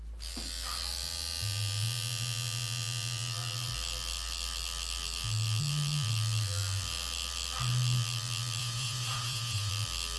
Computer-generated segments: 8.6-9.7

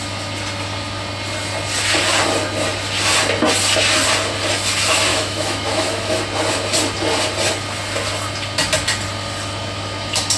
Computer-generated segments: 5.1-6.2

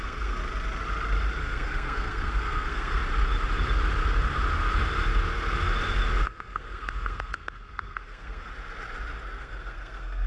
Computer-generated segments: 0.0-0.4; 1.4-3.0; 6.2-8.5; 9.4-10.3

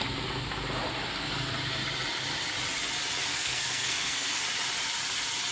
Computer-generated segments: 3.3-4.4

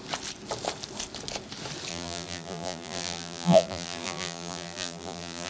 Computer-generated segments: 1.9-5.5

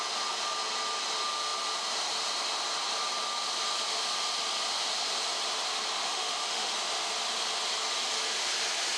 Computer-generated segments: 6.0-6.7